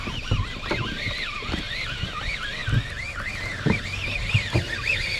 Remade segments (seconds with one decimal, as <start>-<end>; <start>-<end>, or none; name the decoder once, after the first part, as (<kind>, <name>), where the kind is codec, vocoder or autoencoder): none